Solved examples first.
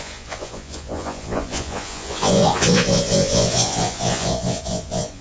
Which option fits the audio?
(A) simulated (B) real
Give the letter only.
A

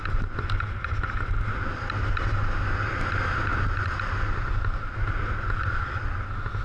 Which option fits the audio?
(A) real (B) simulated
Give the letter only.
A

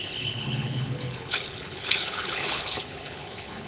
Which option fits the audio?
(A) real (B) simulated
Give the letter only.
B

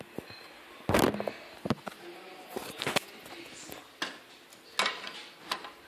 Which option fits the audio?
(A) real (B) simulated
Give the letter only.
A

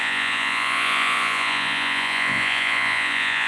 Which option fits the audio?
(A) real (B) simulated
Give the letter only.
B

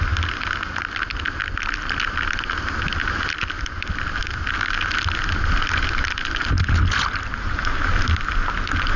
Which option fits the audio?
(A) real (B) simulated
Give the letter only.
A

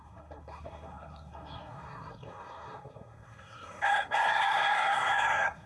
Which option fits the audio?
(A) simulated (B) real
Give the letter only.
A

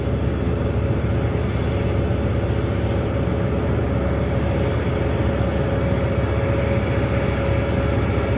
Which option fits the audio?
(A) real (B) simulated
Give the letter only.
A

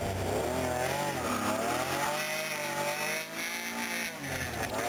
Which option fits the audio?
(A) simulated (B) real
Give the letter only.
B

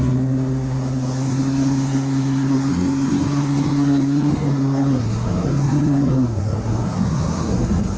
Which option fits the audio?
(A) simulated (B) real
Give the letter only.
A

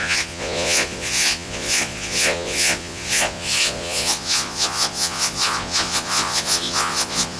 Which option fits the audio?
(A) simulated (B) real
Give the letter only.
A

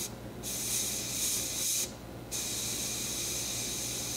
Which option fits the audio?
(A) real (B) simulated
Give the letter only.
A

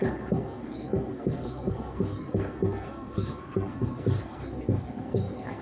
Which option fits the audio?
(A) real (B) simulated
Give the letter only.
B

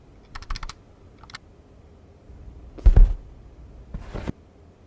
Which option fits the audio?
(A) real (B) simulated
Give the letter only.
A